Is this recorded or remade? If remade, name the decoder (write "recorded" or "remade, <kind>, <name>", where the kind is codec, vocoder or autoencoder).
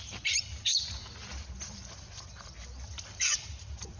recorded